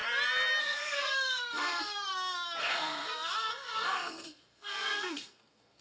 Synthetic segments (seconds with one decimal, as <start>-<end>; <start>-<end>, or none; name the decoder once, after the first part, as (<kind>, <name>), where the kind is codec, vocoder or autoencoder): 0.6-2.1 (codec, SNAC); 2.6-5.8